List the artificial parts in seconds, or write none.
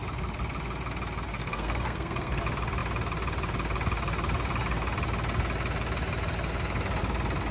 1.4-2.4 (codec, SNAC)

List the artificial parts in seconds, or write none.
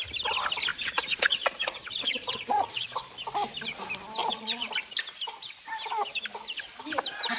0.7-3.0 (vocoder, Vocos); 4.2-4.7